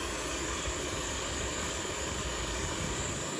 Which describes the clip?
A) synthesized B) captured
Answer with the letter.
A